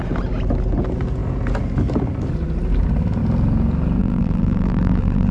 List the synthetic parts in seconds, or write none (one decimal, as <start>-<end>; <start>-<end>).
4.0-5.3